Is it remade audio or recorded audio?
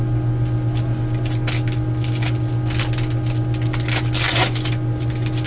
recorded